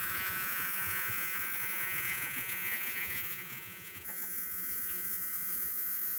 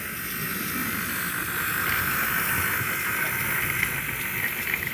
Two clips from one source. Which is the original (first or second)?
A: second